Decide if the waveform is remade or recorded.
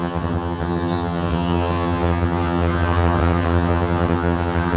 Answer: remade